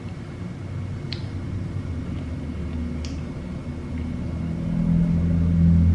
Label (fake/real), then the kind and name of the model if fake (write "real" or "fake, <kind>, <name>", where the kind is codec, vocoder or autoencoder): real